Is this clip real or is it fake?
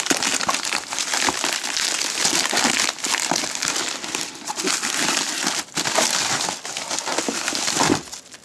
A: real